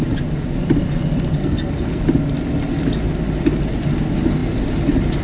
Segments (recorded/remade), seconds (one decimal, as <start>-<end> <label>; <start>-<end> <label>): 0.0-1.4 recorded; 1.4-2.0 remade; 2.0-5.2 recorded